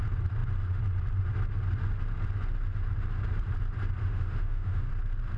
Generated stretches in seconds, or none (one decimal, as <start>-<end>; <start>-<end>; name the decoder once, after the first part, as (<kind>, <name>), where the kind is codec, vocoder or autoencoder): 4.0-4.9 (autoencoder, DAC-VAE)

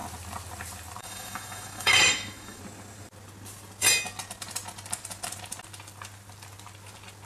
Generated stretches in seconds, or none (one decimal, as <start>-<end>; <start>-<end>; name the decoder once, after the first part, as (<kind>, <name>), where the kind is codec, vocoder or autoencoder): 1.0-2.6 (autoencoder, DAC-VAE)

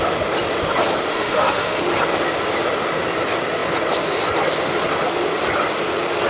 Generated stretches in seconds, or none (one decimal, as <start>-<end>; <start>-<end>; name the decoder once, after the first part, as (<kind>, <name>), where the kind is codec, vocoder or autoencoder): 1.1-1.8 (autoencoder, DAC-VAE)

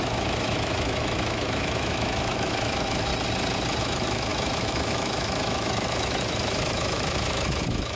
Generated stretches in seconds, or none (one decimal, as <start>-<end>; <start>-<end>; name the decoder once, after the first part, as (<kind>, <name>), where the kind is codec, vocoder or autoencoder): 0.0-3.1 (autoencoder, DAC-VAE); 3.8-8.0

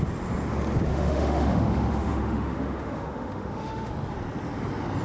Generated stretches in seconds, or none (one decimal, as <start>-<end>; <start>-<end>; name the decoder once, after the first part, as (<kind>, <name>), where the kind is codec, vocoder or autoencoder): 0.9-3.9 (autoencoder, DAC-VAE)

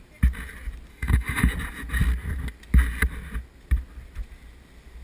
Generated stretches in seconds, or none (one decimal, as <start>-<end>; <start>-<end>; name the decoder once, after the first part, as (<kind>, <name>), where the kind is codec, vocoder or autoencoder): 0.9-1.5 (autoencoder, DAC-VAE)